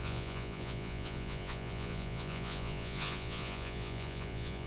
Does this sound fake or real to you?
fake